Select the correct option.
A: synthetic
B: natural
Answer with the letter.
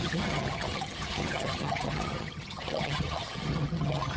A